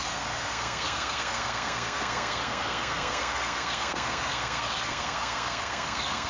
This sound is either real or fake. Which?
fake